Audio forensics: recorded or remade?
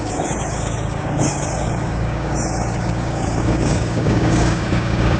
remade